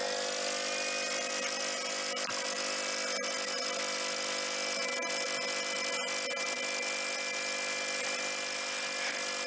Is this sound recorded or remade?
recorded